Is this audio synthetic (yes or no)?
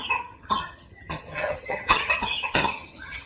yes